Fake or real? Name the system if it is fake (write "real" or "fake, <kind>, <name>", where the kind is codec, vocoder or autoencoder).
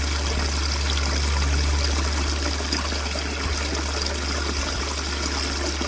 real